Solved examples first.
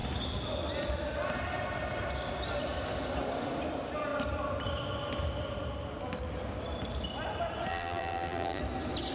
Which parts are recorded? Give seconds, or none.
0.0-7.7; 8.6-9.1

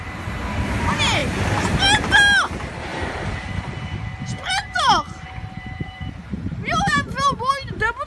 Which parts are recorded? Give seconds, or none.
0.0-2.9; 7.1-8.1

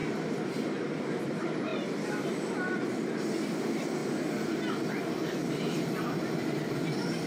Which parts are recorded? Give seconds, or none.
0.0-1.2; 4.0-6.5

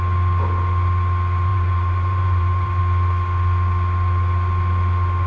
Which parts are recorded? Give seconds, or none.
0.0-1.5; 2.8-5.3